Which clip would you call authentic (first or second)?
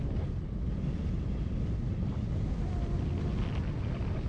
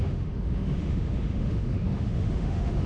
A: first